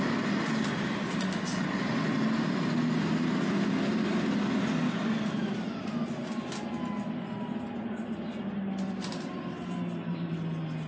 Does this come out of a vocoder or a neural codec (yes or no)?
no